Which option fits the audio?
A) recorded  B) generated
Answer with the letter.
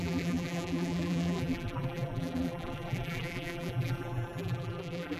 B